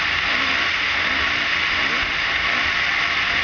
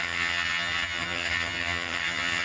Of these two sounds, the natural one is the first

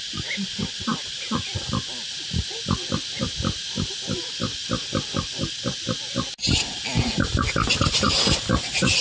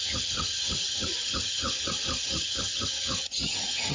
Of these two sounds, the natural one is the first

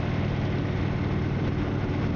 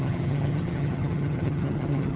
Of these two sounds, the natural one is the first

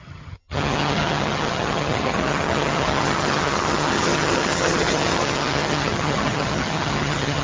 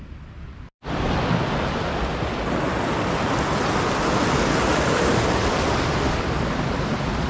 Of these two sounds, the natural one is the second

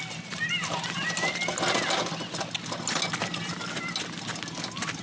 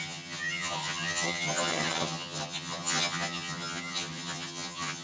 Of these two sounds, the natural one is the first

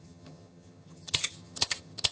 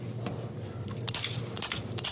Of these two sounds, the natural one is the second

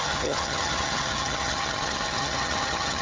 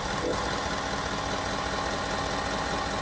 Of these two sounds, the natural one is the second